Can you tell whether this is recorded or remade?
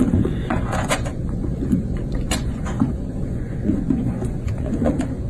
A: remade